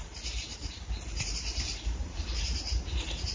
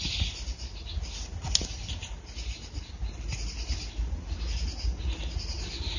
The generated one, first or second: first